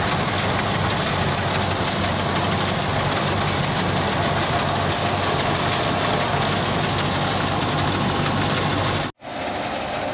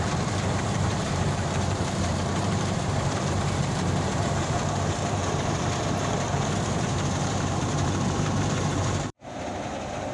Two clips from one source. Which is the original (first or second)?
first